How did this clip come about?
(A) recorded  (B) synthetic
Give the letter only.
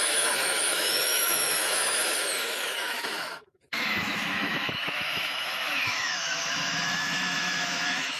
B